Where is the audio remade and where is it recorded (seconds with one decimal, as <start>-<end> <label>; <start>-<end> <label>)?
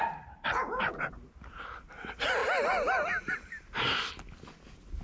0.0-5.0 recorded